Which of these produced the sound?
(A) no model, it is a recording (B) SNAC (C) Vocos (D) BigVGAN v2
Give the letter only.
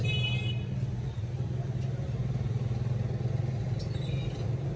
A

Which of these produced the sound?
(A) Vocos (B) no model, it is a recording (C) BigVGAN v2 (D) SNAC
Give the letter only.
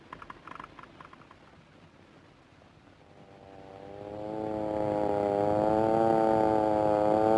B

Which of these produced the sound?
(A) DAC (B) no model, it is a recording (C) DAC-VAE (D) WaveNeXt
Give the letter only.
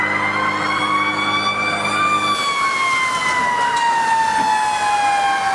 B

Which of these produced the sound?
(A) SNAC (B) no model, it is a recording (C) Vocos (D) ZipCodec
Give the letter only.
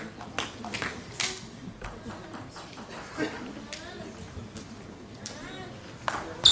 B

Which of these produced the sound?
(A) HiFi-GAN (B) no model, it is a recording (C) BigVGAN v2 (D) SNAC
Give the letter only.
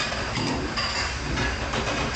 B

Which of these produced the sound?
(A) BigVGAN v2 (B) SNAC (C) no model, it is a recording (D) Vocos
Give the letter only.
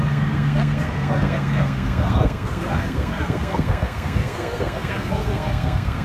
B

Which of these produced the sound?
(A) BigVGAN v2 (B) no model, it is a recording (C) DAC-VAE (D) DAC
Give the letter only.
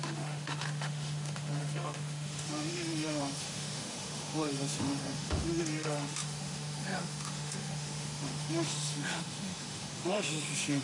C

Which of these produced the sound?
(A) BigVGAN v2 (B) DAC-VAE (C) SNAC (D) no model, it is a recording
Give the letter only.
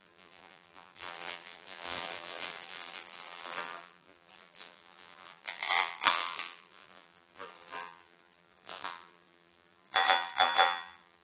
A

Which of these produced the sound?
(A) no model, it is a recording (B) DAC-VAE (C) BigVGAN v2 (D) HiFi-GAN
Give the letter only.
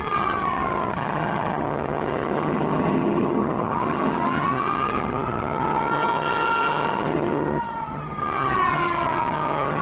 D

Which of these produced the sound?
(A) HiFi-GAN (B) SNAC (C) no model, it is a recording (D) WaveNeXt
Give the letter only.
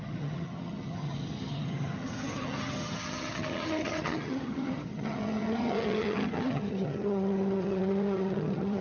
A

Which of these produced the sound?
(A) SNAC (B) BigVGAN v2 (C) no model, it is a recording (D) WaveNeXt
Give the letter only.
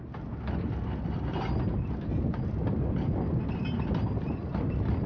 C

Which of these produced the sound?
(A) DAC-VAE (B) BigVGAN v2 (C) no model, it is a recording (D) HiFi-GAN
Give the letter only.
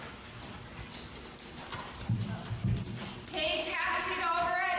C